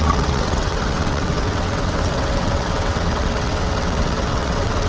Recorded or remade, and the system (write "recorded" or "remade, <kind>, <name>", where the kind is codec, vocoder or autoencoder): remade, vocoder, WaveNeXt